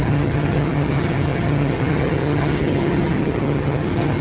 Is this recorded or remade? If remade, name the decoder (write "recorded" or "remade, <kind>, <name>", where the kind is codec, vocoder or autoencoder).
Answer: remade, vocoder, HiFi-GAN